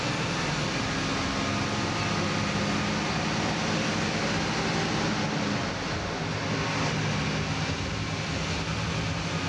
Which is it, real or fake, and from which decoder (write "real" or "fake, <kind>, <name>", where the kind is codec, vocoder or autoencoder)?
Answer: real